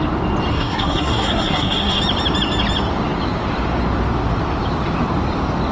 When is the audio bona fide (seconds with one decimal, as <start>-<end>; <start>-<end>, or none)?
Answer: 0.0-0.5; 2.0-5.7